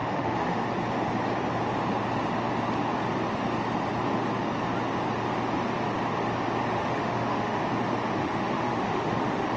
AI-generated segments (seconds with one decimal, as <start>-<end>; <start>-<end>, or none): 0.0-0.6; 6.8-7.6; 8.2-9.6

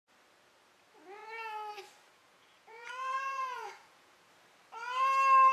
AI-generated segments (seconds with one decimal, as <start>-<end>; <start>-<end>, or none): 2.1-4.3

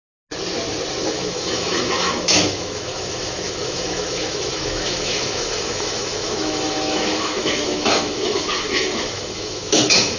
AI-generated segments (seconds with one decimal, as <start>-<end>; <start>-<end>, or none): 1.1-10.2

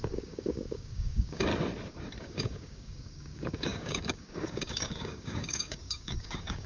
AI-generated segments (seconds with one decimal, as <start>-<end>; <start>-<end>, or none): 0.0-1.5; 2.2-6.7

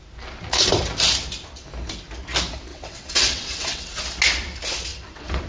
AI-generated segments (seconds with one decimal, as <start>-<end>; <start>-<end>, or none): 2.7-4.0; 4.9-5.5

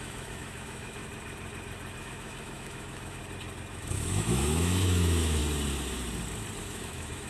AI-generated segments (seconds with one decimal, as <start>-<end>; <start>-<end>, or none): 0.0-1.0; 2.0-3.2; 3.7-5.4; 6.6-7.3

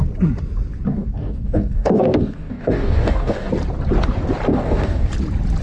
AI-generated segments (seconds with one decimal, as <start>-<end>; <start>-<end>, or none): 0.9-3.5; 4.5-5.1

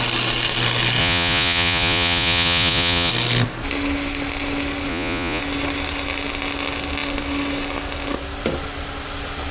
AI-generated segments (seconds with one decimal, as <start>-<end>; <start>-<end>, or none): 1.0-3.1; 4.9-5.4